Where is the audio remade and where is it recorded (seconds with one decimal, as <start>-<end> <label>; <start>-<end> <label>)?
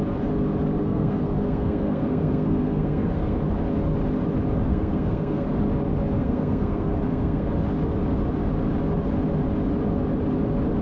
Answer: 0.0-0.8 recorded; 0.8-3.4 remade; 3.4-4.7 recorded; 4.7-5.5 remade; 5.5-6.2 recorded; 6.2-7.5 remade; 7.5-10.8 recorded